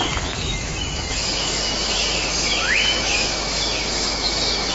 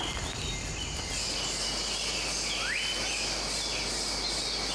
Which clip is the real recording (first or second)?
second